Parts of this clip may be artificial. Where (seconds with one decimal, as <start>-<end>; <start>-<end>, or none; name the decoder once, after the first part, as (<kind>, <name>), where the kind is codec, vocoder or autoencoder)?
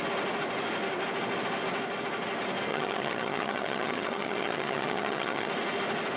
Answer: 2.7-5.5 (vocoder, HiFi-GAN)